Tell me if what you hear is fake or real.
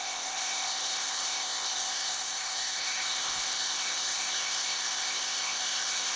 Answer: fake